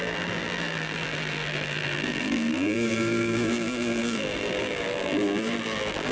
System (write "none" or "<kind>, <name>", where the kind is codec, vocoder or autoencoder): vocoder, BigVGAN v2